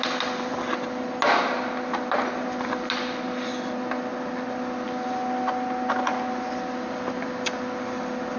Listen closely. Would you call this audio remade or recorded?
recorded